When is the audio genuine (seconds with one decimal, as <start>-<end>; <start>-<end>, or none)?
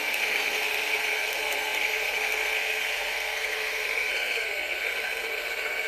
none